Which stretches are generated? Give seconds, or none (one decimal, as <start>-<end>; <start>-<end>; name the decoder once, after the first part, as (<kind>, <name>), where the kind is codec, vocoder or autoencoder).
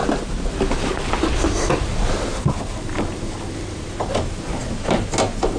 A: none